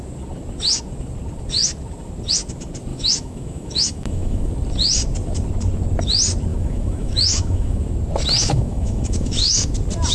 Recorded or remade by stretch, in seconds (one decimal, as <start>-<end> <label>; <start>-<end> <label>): 0.0-2.9 recorded; 2.9-4.5 remade; 4.5-6.5 recorded; 6.5-7.8 remade; 7.8-8.4 recorded; 8.4-9.7 remade; 9.7-10.1 recorded